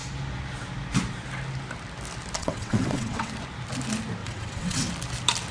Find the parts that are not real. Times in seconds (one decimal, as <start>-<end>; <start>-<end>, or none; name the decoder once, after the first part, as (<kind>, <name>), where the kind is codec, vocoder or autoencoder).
2.4-3.3 (vocoder, WaveNeXt); 4.2-4.9